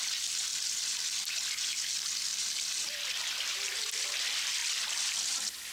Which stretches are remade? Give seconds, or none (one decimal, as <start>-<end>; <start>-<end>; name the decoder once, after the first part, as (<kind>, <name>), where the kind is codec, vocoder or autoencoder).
0.5-1.6 (vocoder, BigVGAN v2); 2.3-3.2